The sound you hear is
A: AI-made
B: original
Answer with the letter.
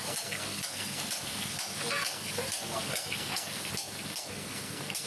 A